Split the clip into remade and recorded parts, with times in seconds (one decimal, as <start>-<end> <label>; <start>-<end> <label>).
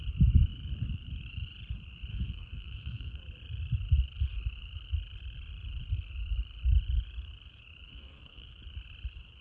0.0-2.1 recorded; 2.1-3.2 remade; 3.2-7.9 recorded; 7.9-8.6 remade; 8.6-9.4 recorded